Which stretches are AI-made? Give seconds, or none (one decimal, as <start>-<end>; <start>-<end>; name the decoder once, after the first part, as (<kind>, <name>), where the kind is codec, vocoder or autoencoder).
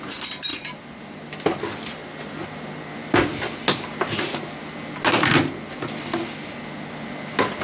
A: none